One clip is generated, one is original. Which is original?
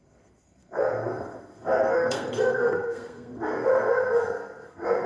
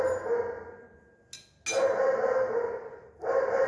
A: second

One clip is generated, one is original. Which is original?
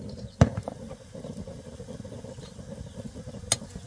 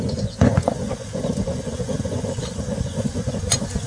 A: first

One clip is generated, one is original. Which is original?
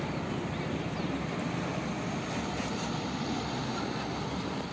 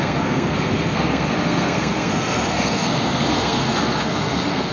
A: first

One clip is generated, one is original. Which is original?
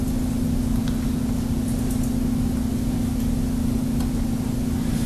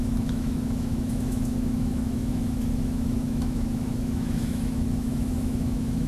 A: first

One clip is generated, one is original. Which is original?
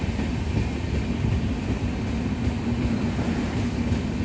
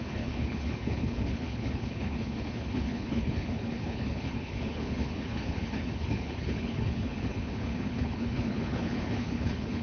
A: first